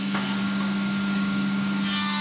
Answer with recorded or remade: remade